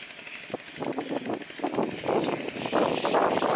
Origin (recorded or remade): recorded